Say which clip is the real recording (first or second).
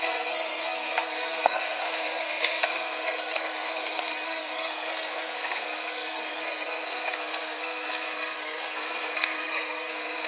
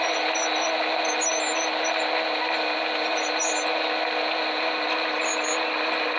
second